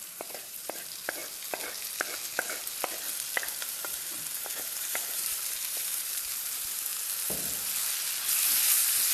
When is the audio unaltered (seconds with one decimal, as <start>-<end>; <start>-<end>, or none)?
1.2-3.6; 6.9-9.1